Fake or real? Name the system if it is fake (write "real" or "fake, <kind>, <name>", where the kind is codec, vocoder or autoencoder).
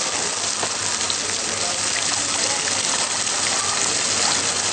real